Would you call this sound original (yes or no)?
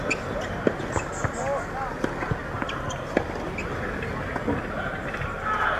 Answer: yes